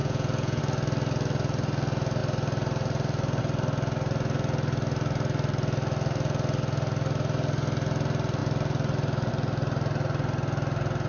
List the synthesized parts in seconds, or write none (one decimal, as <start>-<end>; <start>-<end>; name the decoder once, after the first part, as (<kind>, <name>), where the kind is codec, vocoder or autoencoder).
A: 0.0-0.6 (vocoder, Vocos)